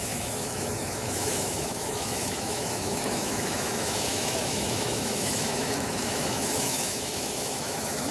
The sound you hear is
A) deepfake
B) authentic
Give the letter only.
A